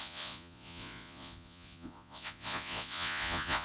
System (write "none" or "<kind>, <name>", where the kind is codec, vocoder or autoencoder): vocoder, Vocos